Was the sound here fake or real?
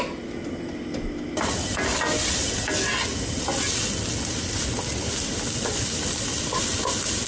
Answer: real